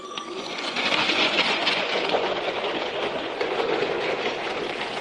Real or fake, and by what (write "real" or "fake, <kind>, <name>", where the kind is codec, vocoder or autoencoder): fake, vocoder, Vocos